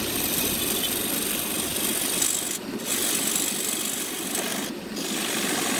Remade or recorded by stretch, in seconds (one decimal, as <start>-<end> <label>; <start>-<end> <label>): 0.0-5.8 recorded